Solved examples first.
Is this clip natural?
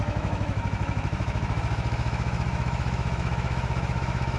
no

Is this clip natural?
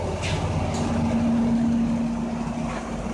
yes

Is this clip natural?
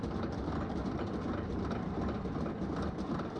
yes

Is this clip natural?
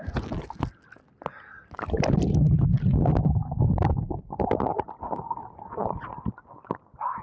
yes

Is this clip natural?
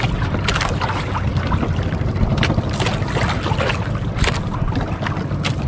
yes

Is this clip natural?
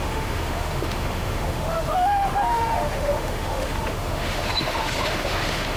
no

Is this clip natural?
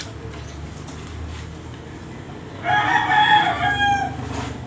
yes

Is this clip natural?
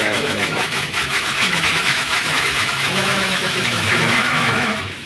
no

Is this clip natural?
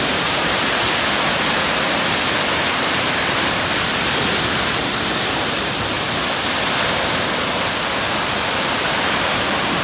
yes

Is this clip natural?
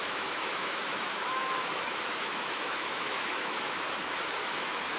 no